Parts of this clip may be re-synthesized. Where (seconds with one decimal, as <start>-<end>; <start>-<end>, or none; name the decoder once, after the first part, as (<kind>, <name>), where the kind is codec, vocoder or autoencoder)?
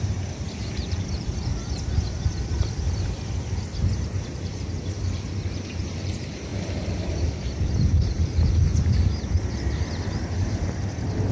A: 0.0-1.5 (vocoder, BigVGAN v2); 4.2-11.3